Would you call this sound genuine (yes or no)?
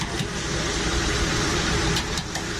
no